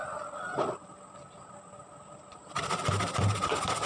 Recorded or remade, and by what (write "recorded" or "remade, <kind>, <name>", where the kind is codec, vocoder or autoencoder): recorded